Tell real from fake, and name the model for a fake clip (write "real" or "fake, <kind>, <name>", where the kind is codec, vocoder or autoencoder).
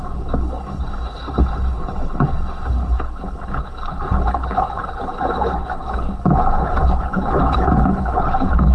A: fake, codec, HILCodec